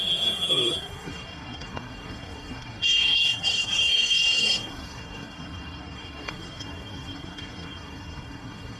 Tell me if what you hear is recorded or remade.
remade